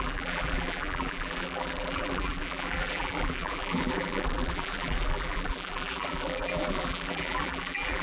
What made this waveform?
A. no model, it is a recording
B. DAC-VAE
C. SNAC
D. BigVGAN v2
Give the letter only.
D